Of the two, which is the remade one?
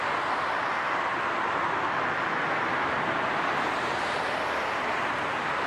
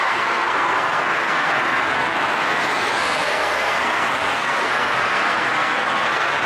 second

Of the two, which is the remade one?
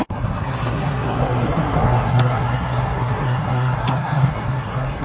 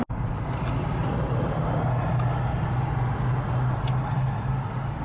first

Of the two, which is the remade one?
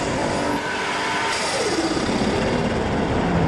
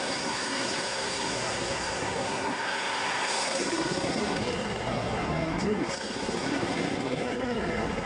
second